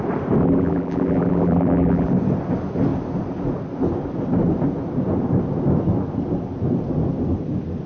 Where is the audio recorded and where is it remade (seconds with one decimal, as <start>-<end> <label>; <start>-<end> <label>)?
0.0-0.4 recorded; 0.4-2.1 remade; 2.1-7.9 recorded